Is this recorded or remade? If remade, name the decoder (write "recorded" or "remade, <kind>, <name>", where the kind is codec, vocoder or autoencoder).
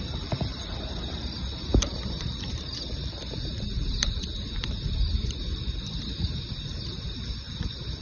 remade, vocoder, BigVGAN v2